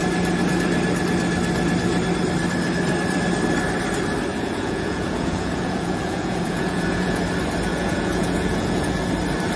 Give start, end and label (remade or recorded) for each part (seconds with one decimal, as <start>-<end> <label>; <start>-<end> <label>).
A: 0.0-4.3 recorded; 4.3-7.2 remade; 7.2-7.7 recorded; 7.7-9.1 remade; 9.1-9.6 recorded